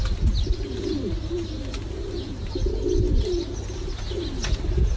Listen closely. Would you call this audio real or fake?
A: real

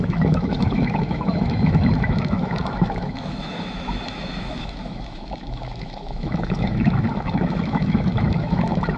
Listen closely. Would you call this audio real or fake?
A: fake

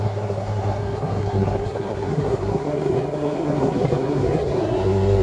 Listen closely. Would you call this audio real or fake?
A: fake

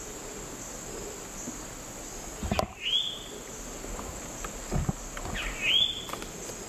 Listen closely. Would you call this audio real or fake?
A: real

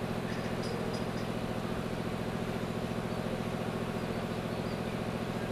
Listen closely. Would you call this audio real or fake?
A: real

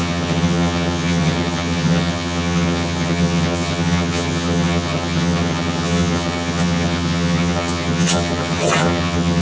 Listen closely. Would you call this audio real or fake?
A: fake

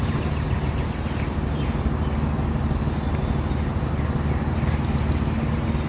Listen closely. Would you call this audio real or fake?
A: real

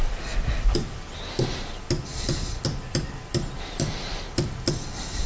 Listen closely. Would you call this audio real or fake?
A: real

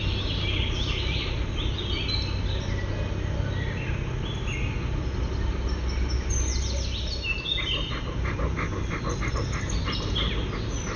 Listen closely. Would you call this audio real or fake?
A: real